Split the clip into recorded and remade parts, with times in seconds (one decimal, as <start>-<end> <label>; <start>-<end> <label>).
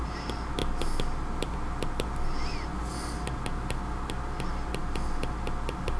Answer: 0.0-6.0 recorded